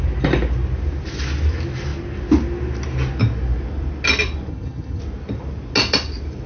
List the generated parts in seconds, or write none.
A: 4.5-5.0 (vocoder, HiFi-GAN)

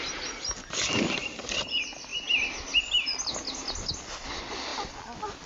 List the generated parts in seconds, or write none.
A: none

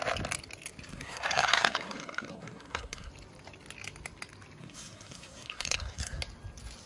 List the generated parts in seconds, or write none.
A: 0.9-3.1 (codec, SNAC); 4.6-6.2

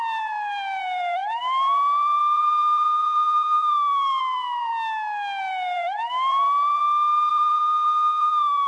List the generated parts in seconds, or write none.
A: 0.0-4.7 (vocoder, BigVGAN v2); 5.4-6.8; 7.3-8.7

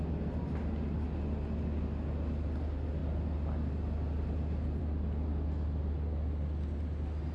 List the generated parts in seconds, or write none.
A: none